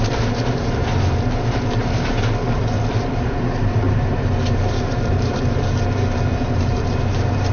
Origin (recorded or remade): remade